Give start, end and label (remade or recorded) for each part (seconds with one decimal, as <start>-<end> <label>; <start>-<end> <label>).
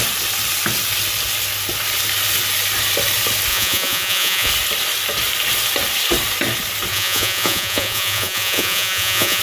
0.0-3.5 recorded; 3.5-4.5 remade; 4.5-6.9 recorded; 6.9-9.4 remade